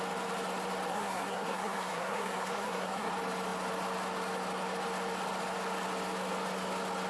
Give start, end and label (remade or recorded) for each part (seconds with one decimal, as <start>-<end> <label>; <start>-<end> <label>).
0.0-0.9 recorded; 0.9-3.1 remade; 3.1-7.1 recorded